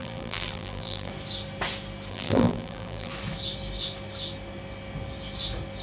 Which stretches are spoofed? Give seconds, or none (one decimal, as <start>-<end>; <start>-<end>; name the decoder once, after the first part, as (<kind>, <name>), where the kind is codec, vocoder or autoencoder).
0.0-1.1 (vocoder, BigVGAN v2); 2.1-3.1